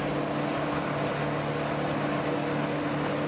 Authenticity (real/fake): real